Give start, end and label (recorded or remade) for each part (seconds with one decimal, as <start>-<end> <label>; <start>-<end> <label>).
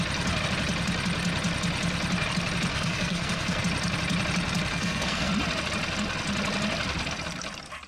0.0-2.7 recorded; 2.7-3.6 remade; 3.6-4.7 recorded; 4.7-5.3 remade; 5.3-7.9 recorded